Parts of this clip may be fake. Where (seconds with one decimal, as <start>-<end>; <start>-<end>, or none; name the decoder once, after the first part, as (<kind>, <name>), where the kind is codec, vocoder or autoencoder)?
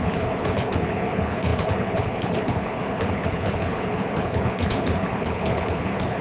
0.0-6.2 (codec, HILCodec)